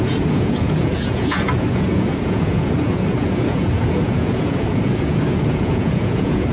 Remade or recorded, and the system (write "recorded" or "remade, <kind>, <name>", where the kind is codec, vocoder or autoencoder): remade, vocoder, Vocos